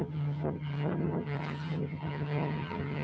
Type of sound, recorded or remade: remade